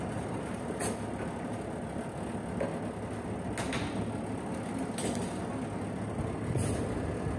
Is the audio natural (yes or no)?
yes